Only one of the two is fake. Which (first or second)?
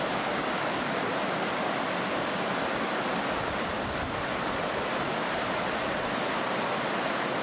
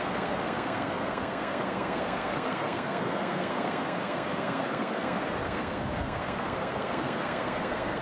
second